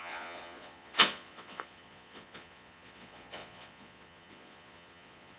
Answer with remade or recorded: remade